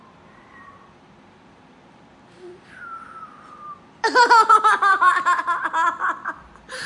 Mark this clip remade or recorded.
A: remade